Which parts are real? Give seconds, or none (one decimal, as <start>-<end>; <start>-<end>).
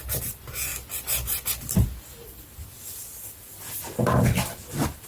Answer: 0.0-5.1